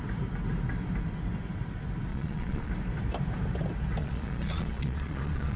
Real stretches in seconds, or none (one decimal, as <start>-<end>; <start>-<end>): 0.0-2.1; 2.7-4.0